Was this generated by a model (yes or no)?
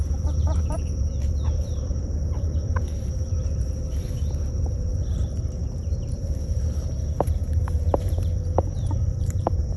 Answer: yes